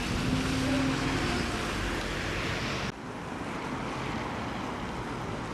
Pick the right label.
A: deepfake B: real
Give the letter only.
B